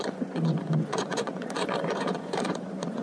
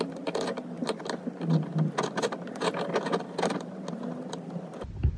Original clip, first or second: second